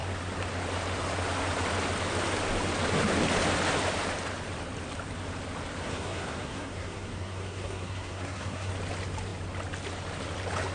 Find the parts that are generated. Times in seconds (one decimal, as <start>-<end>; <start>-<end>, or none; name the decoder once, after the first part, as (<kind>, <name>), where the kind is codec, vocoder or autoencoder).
5.8-8.7 (codec, SNAC)